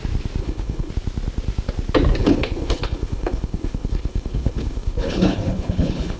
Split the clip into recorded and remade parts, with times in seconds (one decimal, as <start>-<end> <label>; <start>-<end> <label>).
0.0-0.4 recorded; 0.4-0.9 remade; 0.9-2.2 recorded; 2.2-6.2 remade